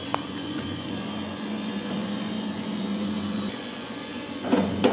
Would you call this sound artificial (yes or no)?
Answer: yes